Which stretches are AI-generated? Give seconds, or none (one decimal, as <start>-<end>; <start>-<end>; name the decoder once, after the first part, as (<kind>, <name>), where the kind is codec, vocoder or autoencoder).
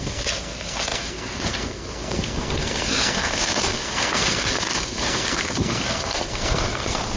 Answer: 0.0-7.2 (codec, SNAC)